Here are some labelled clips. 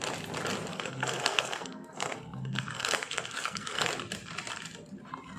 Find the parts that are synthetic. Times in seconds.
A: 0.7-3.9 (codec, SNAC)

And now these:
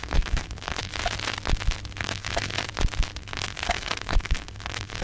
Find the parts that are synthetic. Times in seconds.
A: 0.0-0.9 (codec, SNAC); 2.0-2.7; 3.2-5.0

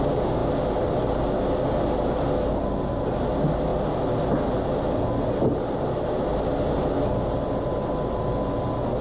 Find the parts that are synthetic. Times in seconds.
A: none

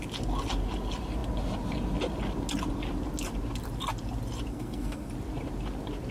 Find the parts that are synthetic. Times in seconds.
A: 4.5-5.1 (codec, SNAC)

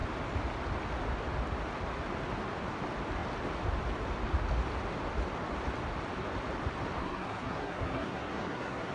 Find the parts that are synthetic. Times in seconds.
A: 7.0-8.9 (codec, SNAC)

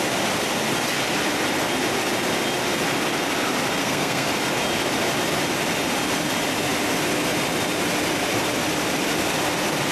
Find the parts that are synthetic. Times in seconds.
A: 3.8-4.3 (codec, SNAC)